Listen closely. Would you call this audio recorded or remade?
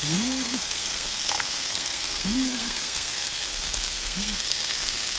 remade